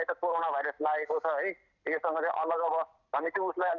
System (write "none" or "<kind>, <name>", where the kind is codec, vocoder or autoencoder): none